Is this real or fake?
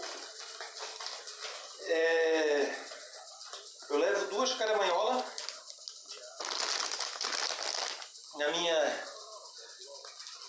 real